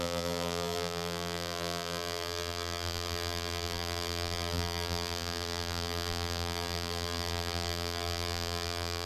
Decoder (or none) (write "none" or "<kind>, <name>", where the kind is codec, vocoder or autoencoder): vocoder, BigVGAN v2